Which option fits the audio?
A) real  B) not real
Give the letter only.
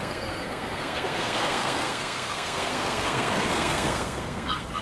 B